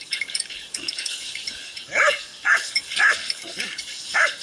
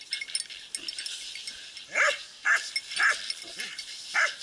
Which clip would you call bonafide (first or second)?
second